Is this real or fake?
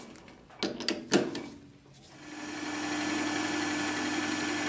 real